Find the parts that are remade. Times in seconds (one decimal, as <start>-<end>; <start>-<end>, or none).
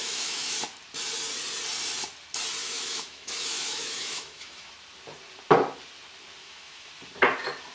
0.0-0.6; 2.6-4.7; 6.4-6.9